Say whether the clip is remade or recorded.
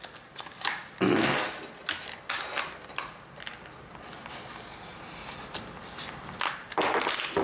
recorded